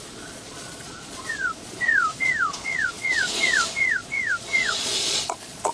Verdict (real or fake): fake